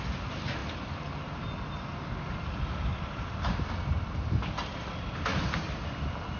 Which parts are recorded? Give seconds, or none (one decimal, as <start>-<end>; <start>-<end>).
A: 0.0-6.4